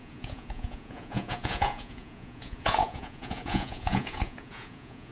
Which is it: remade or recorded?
remade